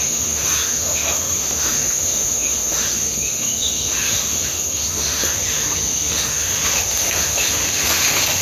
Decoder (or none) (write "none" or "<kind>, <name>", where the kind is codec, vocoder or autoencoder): autoencoder, DAC-VAE